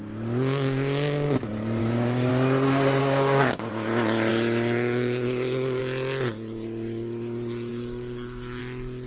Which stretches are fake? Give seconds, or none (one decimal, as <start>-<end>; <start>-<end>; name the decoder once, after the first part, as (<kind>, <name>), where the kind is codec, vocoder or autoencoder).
1.8-2.3 (codec, DAC); 3.0-3.7; 4.3-5.8; 7.7-8.6